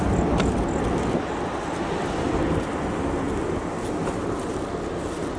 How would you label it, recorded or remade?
recorded